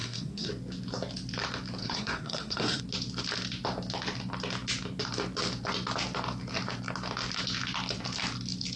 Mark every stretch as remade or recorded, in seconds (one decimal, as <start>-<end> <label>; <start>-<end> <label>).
0.0-0.5 remade; 0.5-1.8 recorded; 1.8-2.8 remade; 2.8-8.8 recorded